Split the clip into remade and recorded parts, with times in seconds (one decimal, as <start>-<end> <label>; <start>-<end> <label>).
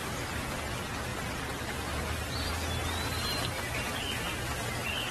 0.0-5.1 recorded